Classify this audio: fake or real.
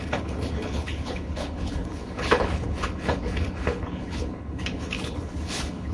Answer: fake